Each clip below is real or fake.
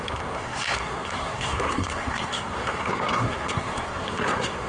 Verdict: fake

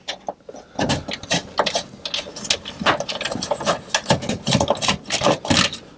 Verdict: real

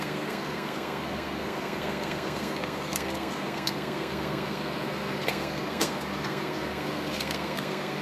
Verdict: fake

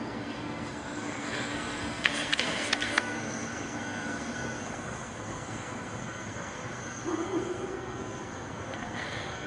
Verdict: fake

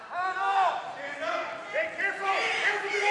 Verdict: real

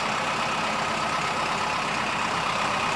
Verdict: real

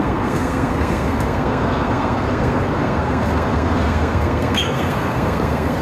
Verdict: fake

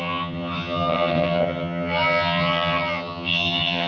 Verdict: fake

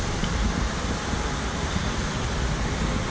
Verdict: real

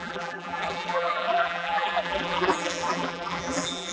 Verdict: fake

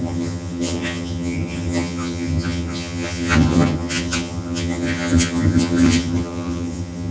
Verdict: fake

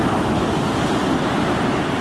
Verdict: real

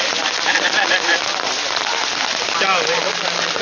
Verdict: real